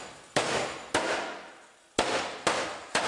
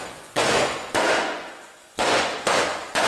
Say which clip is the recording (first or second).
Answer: first